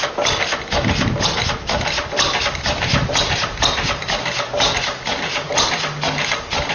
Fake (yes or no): no